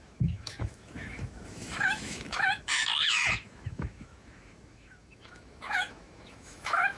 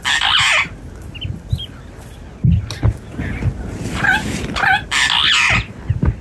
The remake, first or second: first